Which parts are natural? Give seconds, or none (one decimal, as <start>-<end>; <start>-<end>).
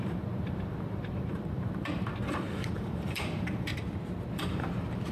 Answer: 3.7-4.3